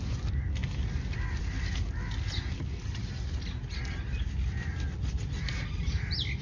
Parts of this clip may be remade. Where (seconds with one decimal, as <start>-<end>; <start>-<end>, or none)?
none